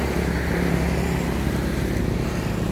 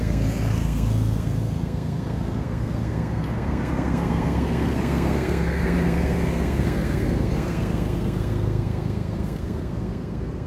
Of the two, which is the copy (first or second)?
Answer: second